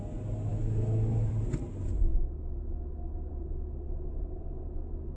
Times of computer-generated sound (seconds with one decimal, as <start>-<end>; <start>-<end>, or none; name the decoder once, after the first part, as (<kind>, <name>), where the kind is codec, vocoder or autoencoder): 0.5-1.3 (autoencoder, DAC-VAE); 2.1-3.3